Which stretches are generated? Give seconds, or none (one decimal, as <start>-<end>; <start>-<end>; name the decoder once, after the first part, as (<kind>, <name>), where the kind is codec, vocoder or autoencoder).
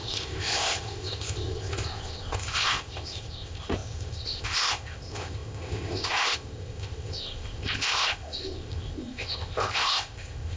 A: 0.0-10.6 (codec, ZipCodec)